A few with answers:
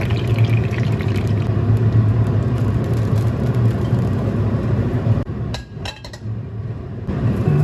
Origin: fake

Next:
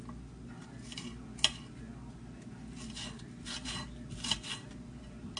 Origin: real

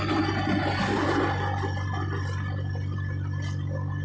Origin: real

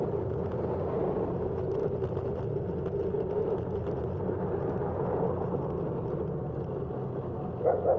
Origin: real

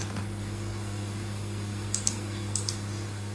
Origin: fake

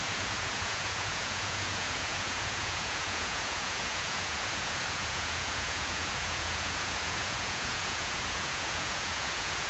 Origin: fake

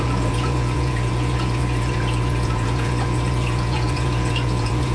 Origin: fake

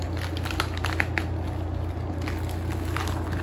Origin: real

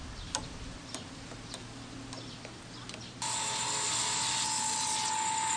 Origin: real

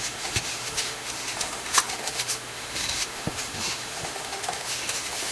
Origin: fake